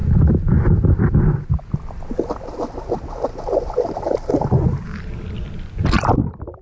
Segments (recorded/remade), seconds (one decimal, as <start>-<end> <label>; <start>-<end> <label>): 0.0-6.6 recorded